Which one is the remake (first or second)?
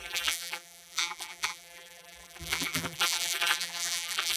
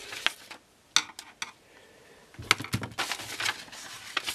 first